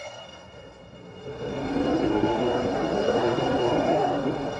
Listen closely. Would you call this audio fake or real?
fake